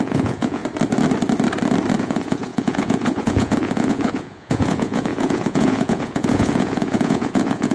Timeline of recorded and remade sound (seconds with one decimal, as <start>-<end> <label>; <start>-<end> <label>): 0.0-0.6 remade; 0.6-2.0 recorded; 2.0-7.7 remade